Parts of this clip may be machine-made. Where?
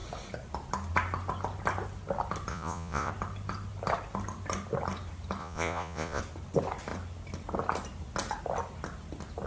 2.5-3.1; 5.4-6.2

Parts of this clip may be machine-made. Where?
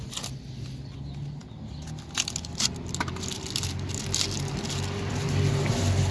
none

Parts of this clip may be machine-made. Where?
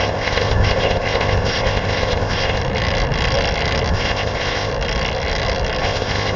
0.0-2.6; 3.9-4.7; 5.8-6.4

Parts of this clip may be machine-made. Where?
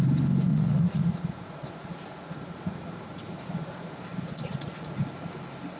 0.5-4.0; 4.5-5.1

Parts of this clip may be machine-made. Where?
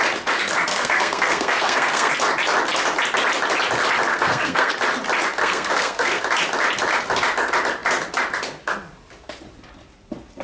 0.7-2.1; 4.1-4.7; 5.4-6.2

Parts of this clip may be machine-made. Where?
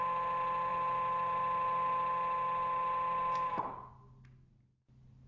none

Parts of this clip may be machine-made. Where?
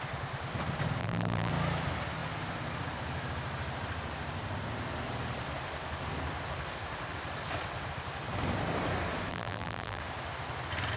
1.0-1.5; 9.3-10.0